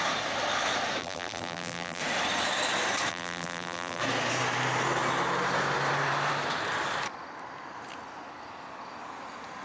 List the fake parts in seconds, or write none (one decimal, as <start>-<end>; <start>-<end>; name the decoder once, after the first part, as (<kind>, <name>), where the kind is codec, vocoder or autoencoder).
1.0-2.0 (vocoder, BigVGAN v2); 3.1-4.0